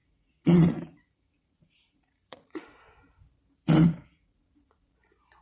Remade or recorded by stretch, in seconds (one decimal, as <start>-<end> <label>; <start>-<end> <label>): 0.0-2.8 remade; 2.8-3.8 recorded; 3.8-4.9 remade; 4.9-5.4 recorded